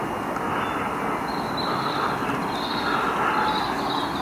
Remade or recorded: recorded